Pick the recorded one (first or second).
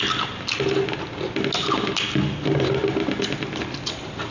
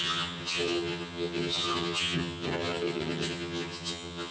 first